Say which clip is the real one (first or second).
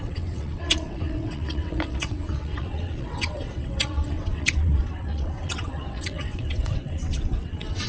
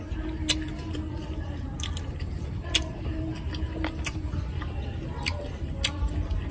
second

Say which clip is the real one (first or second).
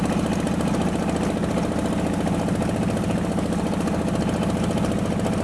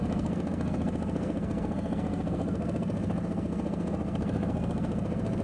first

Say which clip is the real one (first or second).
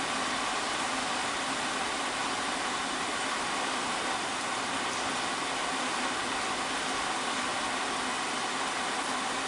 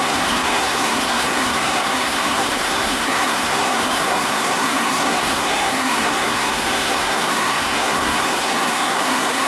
first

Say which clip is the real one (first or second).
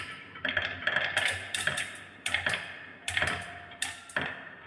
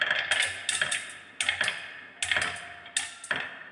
second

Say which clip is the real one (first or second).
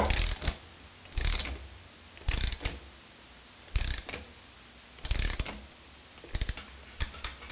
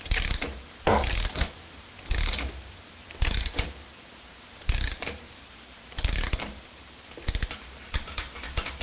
first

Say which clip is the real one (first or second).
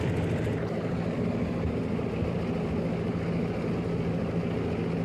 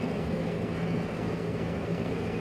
first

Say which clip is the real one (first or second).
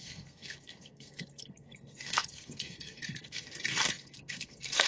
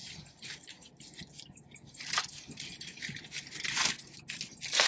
second